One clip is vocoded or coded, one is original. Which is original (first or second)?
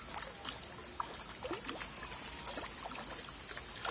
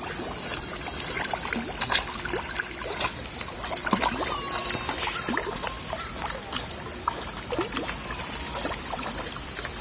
first